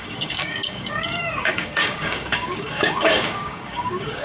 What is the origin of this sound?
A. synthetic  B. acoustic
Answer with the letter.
A